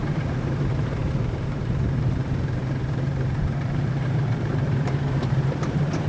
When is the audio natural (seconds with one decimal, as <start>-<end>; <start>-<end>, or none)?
none